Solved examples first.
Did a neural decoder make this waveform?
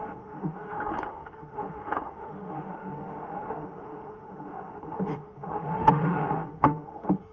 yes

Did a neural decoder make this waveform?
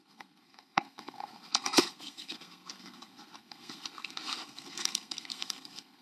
yes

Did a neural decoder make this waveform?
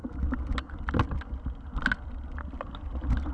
no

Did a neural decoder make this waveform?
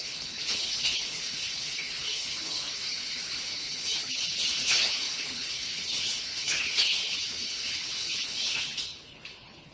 yes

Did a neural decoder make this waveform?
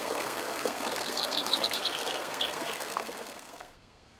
yes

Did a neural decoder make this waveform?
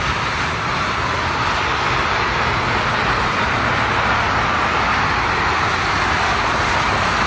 no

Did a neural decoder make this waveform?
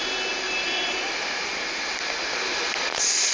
no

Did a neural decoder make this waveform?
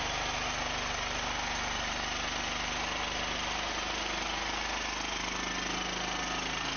no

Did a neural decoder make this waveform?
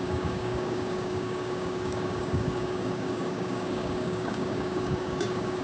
yes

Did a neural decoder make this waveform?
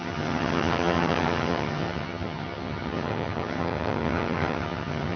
yes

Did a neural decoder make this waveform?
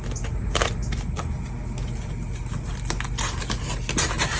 no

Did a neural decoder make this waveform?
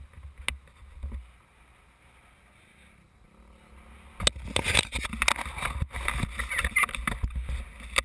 no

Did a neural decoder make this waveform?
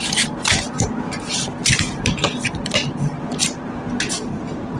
yes